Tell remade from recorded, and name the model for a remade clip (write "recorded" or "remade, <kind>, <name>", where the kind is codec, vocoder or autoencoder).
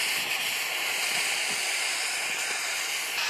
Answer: recorded